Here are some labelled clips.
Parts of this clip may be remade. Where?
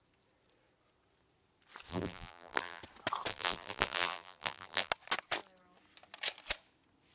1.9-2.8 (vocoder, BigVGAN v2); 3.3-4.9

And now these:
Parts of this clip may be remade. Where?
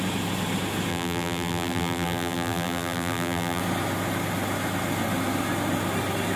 0.9-3.6 (vocoder, BigVGAN v2)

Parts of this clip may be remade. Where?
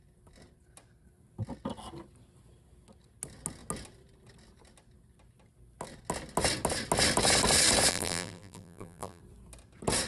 7.9-9.2 (vocoder, BigVGAN v2)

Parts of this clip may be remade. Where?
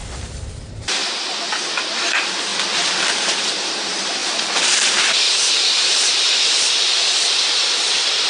0.6-1.0 (vocoder, BigVGAN v2); 2.0-2.5; 3.0-8.3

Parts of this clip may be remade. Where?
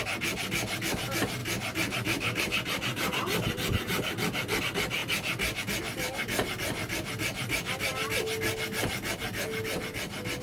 1.4-4.6 (vocoder, BigVGAN v2)